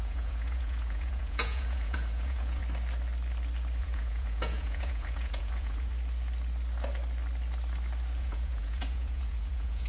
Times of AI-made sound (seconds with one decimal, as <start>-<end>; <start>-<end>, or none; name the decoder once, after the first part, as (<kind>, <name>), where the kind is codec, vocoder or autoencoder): 0.0-2.6 (vocoder, Vocos); 3.8-5.9; 8.2-9.9

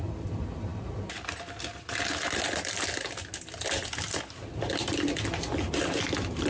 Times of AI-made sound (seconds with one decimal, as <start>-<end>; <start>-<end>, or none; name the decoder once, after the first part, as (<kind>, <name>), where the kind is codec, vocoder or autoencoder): none

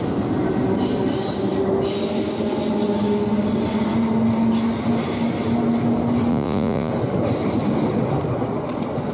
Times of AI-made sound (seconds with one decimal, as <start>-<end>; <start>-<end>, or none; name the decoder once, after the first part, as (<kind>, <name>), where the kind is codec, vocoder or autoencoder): 6.3-6.9 (vocoder, Vocos)